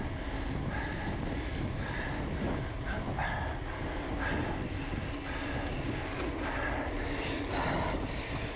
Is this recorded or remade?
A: recorded